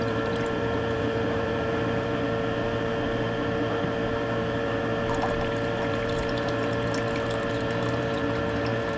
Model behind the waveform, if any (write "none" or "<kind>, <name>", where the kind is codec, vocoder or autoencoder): vocoder, BigVGAN v2